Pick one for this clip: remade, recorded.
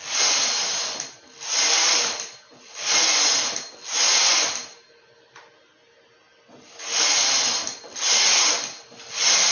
recorded